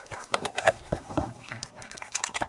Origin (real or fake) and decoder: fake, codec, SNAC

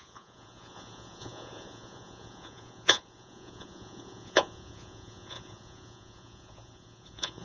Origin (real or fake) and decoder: fake, vocoder, Vocos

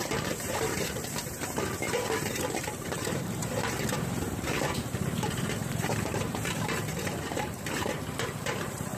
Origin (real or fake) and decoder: fake, vocoder, BigVGAN v2